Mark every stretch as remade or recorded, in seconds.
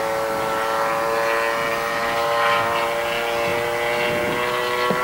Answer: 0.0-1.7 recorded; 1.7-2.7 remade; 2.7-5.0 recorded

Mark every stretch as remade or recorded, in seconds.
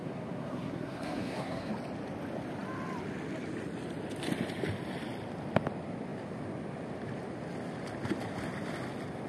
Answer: 0.0-1.7 remade; 1.7-9.3 recorded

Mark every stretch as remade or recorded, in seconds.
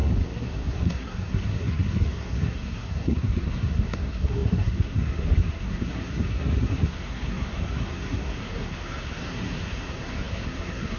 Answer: 0.0-11.0 remade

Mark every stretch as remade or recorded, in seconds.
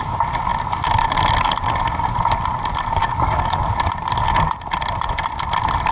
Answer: 0.0-3.0 recorded; 3.0-3.6 remade; 3.6-5.9 recorded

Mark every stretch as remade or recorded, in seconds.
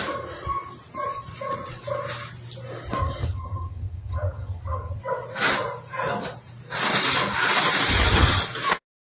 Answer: 0.0-3.0 recorded; 3.0-5.0 remade; 5.0-7.9 recorded; 7.9-8.4 remade; 8.4-9.1 recorded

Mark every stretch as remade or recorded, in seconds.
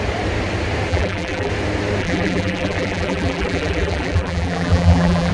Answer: 0.0-0.9 recorded; 0.9-1.5 remade; 1.5-2.0 recorded; 2.0-5.3 remade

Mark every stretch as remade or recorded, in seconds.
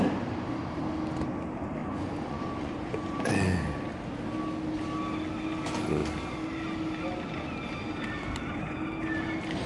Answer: 0.0-1.8 recorded; 1.8-3.3 remade; 3.3-9.7 recorded